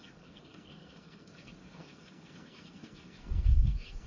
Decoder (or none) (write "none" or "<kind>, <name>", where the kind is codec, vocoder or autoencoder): codec, SNAC